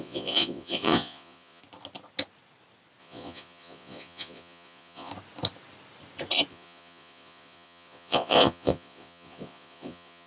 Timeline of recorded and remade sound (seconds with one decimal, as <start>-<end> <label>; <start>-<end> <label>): 0.0-1.6 remade; 1.6-3.0 recorded; 3.0-5.1 remade; 5.1-6.5 recorded; 6.5-10.3 remade